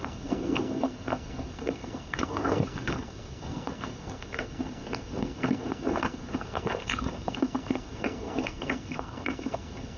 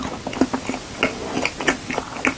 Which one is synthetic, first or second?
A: first